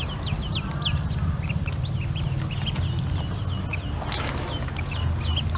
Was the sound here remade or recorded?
recorded